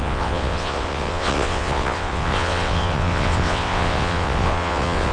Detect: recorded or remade remade